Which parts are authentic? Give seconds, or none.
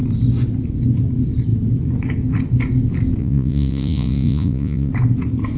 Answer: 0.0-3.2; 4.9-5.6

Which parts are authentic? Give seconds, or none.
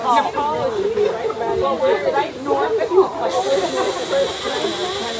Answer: 0.0-5.2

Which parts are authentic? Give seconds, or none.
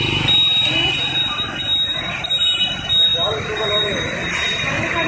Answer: 0.0-5.1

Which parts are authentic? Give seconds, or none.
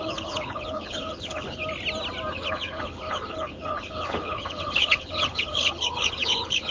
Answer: 1.6-2.3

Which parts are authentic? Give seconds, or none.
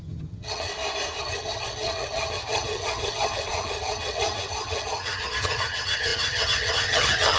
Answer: 0.7-1.2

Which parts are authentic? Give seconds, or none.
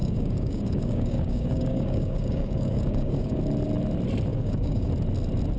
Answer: 3.4-4.3; 4.9-5.6